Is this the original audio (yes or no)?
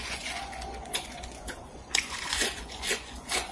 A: no